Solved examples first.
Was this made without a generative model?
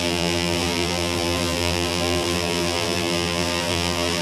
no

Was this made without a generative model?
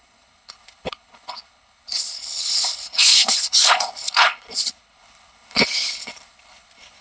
no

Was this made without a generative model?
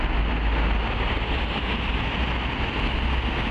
yes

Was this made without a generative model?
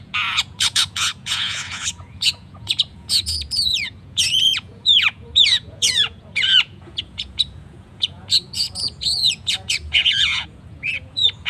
no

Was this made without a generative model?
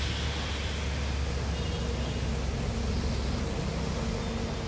yes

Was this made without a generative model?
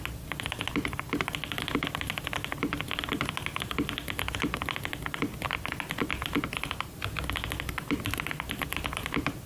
yes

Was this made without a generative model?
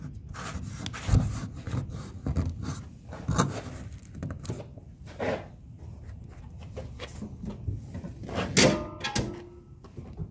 yes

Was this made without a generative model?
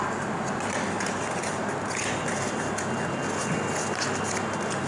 yes